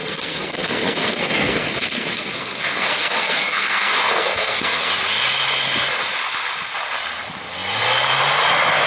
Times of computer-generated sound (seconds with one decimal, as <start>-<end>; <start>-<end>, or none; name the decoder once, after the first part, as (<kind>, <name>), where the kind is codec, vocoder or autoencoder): 0.0-4.9 (codec, SNAC)